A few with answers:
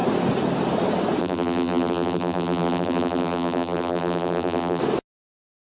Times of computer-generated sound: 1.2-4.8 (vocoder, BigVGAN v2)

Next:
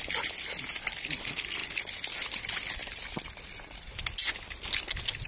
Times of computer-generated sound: 1.6-4.0 (vocoder, BigVGAN v2)

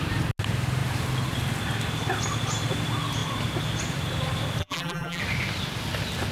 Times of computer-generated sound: 4.6-5.2 (vocoder, BigVGAN v2)